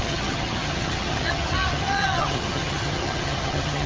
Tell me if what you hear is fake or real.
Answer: fake